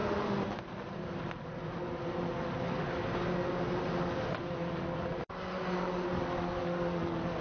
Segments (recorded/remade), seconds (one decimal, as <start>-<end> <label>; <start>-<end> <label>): 0.0-7.4 recorded